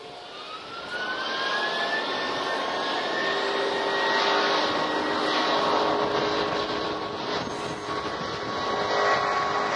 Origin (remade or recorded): recorded